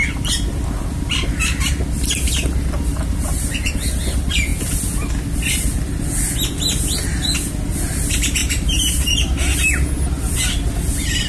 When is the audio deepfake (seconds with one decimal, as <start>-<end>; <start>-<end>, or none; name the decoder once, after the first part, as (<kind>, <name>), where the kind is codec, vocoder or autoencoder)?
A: 2.9-3.7 (vocoder, BigVGAN v2); 8.4-9.4